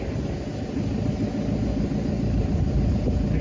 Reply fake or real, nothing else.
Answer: real